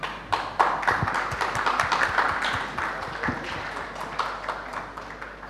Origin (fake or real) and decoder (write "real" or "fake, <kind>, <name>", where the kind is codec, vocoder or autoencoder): real